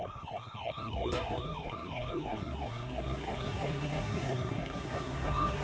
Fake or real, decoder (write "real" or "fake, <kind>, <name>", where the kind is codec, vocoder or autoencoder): fake, codec, SNAC